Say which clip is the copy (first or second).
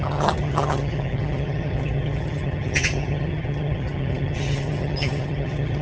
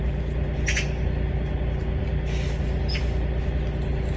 first